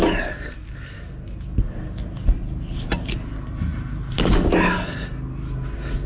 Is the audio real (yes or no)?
yes